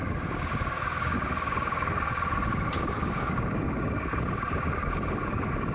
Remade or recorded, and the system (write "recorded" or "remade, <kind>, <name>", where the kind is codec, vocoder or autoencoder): remade, codec, DAC